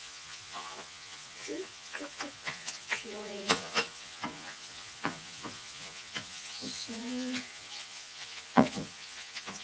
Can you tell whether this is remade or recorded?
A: remade